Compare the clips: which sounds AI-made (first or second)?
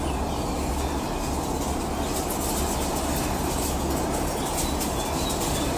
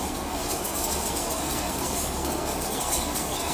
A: second